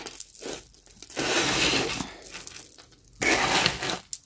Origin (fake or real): real